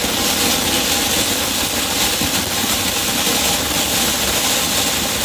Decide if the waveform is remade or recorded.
recorded